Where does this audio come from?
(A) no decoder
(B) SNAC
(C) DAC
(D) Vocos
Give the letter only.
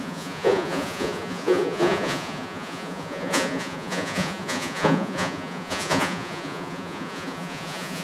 D